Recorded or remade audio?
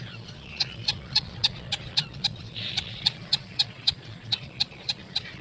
remade